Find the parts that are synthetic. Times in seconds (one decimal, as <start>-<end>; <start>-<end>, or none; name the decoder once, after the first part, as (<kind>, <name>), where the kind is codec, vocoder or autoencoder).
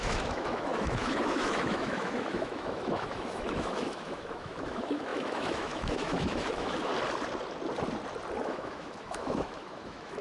0.0-6.9 (autoencoder, DAC-VAE); 8.4-10.2